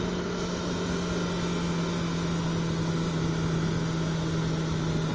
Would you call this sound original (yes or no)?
yes